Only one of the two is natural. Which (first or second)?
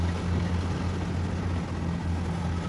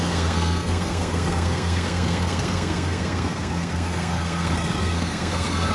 first